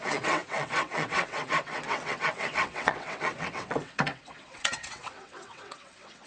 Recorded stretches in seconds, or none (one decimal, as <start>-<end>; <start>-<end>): none